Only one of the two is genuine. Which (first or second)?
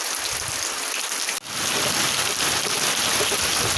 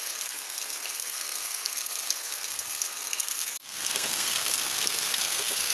first